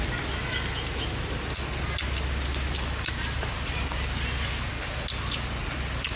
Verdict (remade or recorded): recorded